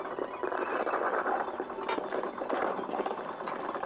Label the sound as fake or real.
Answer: real